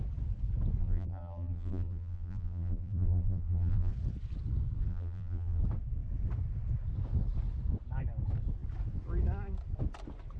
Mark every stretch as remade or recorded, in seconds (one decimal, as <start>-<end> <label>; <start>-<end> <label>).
0.0-0.8 recorded; 0.8-3.9 remade; 3.9-4.9 recorded; 4.9-5.6 remade; 5.6-10.4 recorded